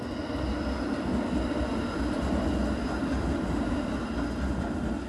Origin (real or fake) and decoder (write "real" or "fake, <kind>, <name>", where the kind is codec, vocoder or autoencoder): real